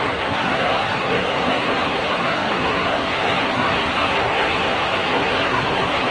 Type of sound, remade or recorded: remade